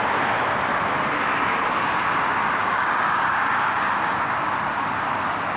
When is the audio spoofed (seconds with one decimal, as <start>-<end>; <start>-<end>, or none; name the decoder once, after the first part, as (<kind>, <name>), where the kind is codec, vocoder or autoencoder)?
2.6-3.9 (codec, DAC)